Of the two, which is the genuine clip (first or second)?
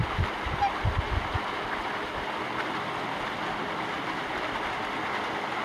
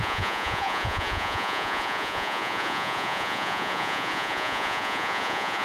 first